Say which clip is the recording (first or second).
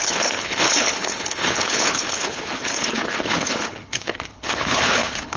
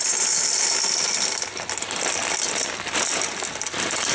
second